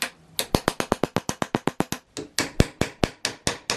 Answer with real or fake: real